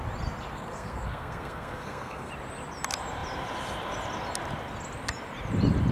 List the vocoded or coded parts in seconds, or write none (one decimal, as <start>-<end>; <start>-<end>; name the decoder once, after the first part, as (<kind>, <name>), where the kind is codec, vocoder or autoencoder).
0.5-2.3 (codec, SNAC)